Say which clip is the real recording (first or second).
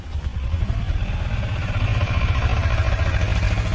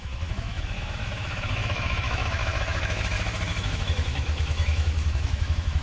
first